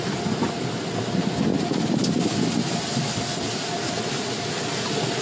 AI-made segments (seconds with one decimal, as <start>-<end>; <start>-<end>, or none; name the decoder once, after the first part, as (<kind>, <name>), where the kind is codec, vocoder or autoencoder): none